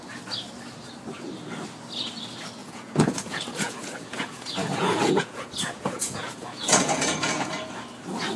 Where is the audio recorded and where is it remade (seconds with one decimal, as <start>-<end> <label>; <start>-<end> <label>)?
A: 0.0-2.6 recorded; 2.6-7.5 remade; 7.5-8.4 recorded

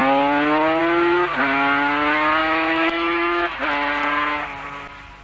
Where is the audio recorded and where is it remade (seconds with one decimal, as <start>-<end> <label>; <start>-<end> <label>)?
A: 0.0-2.4 recorded; 2.4-3.6 remade; 3.6-5.2 recorded